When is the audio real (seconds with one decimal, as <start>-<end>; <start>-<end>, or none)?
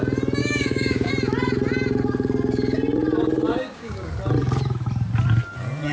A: 0.0-0.4; 1.1-3.5; 4.1-5.9